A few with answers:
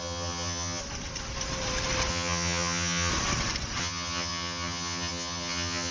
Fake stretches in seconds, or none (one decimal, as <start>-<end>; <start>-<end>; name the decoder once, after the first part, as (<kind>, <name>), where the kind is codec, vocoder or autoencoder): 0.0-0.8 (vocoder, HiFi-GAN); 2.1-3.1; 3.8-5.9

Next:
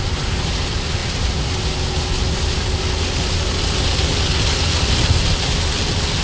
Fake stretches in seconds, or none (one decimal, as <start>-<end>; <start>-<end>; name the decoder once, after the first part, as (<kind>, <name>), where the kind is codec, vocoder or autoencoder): none

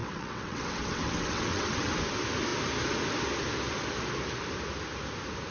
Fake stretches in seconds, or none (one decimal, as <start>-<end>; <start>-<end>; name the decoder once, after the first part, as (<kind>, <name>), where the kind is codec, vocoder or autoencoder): 0.0-1.9 (vocoder, WaveNeXt)